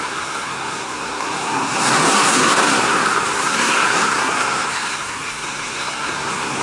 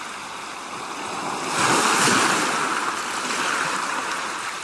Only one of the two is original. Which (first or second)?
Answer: second